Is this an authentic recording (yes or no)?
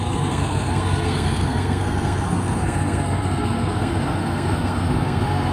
no